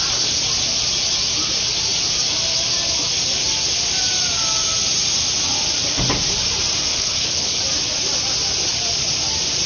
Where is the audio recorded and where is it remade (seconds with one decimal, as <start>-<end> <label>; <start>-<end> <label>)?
0.0-6.9 recorded; 6.9-7.6 remade; 7.6-9.7 recorded